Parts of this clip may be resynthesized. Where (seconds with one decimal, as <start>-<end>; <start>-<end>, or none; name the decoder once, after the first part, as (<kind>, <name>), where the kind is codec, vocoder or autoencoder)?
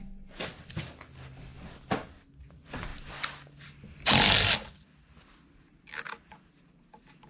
none